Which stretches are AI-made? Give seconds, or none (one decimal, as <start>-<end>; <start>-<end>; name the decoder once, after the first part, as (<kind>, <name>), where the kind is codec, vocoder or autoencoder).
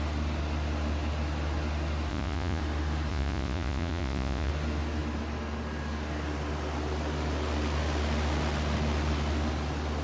2.1-2.6 (vocoder, Vocos); 3.1-4.5